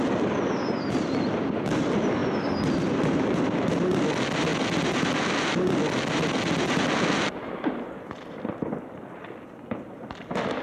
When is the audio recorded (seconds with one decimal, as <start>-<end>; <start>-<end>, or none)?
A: 0.0-10.6